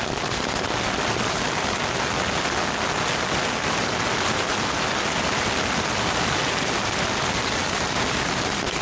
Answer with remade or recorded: recorded